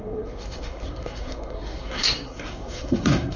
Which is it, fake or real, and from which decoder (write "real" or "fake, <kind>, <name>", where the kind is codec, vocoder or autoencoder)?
fake, codec, SNAC